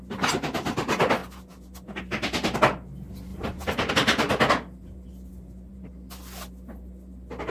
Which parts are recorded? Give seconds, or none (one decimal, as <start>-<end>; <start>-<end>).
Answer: 0.0-3.3; 3.9-5.3; 5.9-7.5